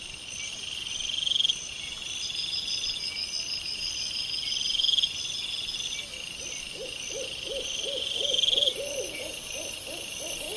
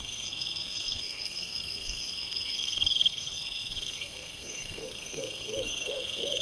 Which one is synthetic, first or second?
second